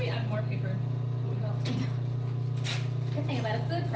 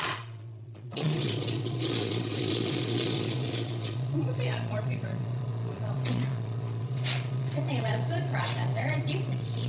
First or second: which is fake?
second